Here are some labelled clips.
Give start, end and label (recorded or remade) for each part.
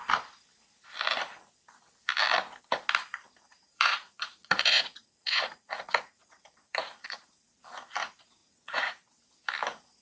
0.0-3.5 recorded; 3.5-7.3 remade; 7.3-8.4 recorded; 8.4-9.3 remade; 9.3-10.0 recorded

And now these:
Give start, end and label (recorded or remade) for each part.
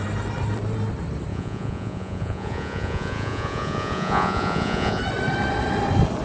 0.0-1.3 recorded; 1.3-5.0 remade; 5.0-6.2 recorded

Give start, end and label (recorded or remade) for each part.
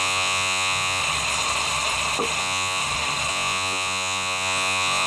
0.0-1.0 remade; 1.0-2.4 recorded; 2.4-2.8 remade; 2.8-3.3 recorded; 3.3-5.1 remade